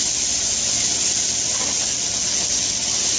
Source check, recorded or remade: recorded